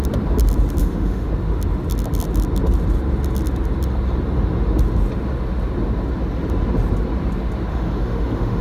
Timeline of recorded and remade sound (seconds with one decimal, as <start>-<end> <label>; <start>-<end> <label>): 0.0-0.8 recorded; 0.8-1.3 remade; 1.3-7.7 recorded; 7.7-8.6 remade